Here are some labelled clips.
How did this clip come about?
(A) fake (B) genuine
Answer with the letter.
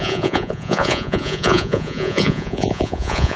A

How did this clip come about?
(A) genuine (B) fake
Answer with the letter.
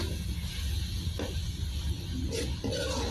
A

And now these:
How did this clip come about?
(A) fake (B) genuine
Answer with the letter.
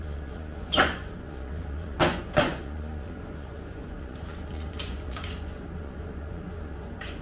A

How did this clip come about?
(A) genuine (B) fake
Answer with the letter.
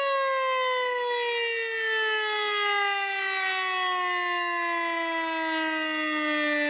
A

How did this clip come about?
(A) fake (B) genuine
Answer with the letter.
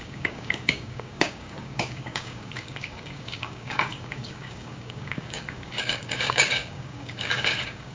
A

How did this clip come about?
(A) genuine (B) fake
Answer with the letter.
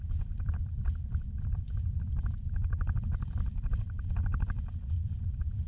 A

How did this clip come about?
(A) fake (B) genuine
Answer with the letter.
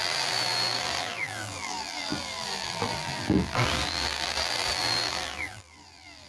A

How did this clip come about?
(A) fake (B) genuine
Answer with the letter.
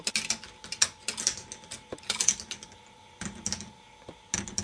B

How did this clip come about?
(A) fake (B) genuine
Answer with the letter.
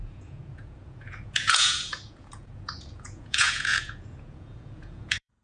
A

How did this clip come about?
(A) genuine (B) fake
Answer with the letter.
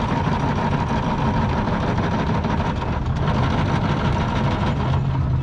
A